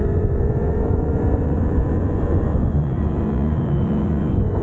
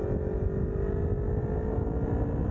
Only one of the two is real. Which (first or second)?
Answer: second